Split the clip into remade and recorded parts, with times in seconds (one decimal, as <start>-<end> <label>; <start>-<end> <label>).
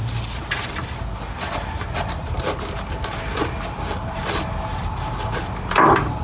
0.0-6.2 recorded